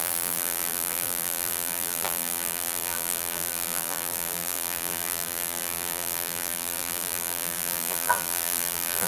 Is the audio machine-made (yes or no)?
yes